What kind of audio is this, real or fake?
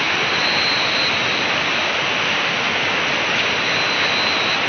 real